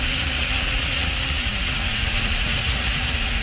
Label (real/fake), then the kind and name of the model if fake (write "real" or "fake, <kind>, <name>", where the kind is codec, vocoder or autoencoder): fake, vocoder, Vocos